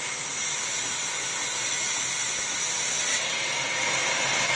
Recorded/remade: recorded